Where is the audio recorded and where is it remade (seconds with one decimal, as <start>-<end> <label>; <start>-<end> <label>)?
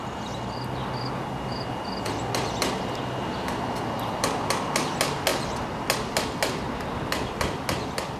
0.0-8.2 recorded